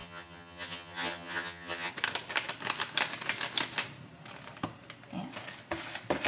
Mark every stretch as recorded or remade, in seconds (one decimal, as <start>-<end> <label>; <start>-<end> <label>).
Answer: 0.0-1.9 remade; 1.9-6.3 recorded